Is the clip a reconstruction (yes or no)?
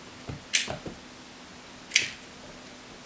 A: no